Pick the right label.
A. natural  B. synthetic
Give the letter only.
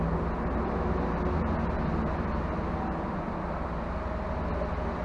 A